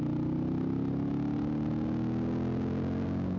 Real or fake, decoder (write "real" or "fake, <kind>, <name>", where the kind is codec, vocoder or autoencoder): real